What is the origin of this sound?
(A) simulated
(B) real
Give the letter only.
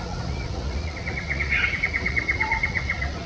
A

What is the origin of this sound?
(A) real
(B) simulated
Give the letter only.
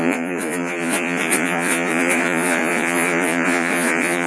B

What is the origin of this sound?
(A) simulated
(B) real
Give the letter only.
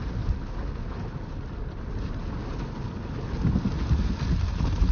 B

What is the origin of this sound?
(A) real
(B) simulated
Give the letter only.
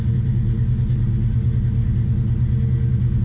A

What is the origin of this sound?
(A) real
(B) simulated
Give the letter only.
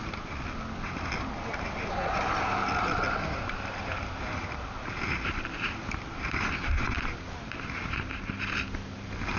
A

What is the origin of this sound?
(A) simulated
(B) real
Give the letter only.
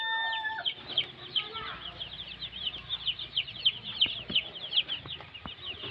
B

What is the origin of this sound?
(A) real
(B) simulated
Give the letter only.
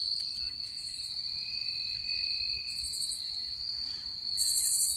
B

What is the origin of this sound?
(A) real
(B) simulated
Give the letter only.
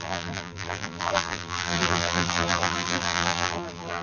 B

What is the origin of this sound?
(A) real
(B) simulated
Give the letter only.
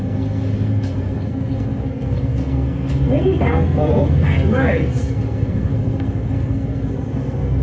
B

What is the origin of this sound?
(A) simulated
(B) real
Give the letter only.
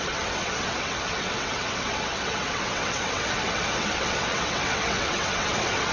A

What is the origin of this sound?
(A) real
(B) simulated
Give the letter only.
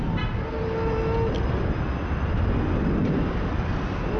A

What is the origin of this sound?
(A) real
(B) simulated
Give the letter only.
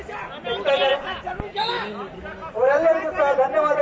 A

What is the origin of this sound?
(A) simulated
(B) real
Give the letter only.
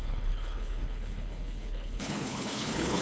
A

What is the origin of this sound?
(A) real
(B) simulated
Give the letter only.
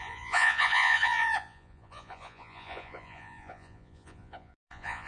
B